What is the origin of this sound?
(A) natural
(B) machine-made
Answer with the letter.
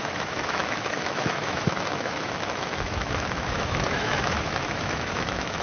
B